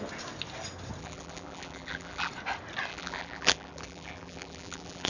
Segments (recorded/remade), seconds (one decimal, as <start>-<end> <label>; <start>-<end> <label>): 0.0-1.0 recorded; 1.0-2.3 remade; 2.3-2.9 recorded; 2.9-5.1 remade